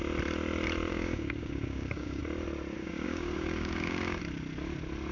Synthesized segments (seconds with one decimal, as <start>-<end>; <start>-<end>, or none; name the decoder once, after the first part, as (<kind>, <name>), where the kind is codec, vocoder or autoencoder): 0.9-2.2 (codec, DAC); 2.8-4.2